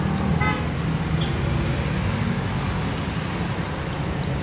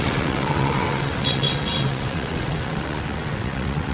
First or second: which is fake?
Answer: second